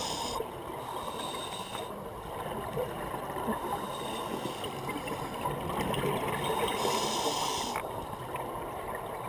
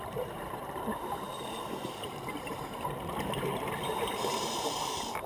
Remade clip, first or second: second